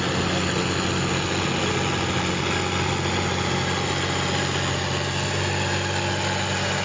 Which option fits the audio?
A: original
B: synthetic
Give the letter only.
A